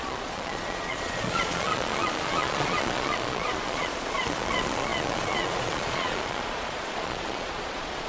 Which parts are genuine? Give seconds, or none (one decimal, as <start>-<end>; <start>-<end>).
none